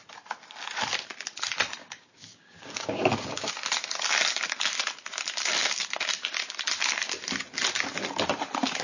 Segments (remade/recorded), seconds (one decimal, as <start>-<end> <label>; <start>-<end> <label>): 0.0-1.8 recorded; 1.8-3.5 remade; 3.5-8.8 recorded